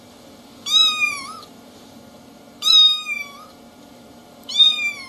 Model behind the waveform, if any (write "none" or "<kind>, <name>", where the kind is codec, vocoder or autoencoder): vocoder, BigVGAN v2